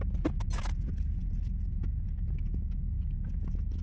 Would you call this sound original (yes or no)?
yes